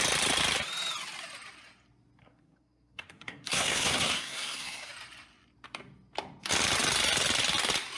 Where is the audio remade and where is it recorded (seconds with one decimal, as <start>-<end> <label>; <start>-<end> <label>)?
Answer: 0.0-2.2 recorded; 2.2-4.9 remade; 4.9-8.0 recorded